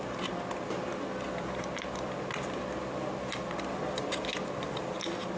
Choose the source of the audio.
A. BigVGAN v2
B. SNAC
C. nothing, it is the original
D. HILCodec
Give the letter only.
C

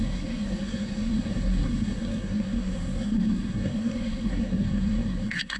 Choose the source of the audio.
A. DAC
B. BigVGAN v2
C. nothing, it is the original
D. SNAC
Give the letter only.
D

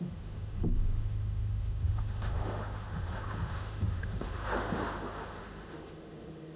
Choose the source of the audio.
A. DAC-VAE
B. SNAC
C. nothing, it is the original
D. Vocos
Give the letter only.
A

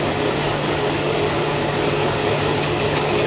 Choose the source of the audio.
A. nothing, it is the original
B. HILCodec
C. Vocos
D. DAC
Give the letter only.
D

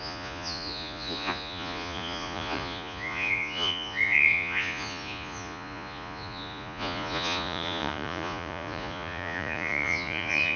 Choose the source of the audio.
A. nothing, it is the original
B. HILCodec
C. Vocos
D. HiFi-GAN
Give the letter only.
C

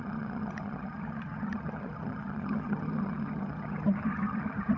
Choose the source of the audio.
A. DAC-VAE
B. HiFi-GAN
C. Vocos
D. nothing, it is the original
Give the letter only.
B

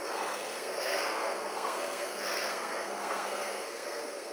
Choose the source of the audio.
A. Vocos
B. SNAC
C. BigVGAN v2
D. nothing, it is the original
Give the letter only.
B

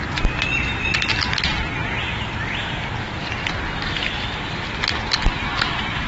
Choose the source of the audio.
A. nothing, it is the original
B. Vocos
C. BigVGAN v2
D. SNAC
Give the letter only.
A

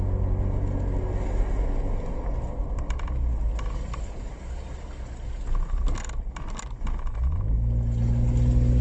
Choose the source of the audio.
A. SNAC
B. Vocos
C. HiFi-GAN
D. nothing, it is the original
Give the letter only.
D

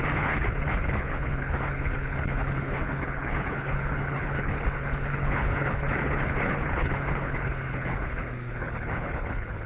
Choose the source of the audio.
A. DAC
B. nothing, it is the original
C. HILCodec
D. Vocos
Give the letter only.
C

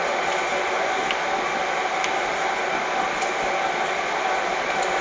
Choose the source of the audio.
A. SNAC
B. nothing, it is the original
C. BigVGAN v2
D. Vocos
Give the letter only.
B